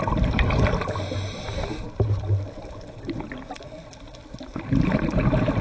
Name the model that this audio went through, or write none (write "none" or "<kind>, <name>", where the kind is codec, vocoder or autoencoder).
none